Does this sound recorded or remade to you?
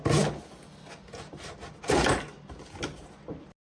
recorded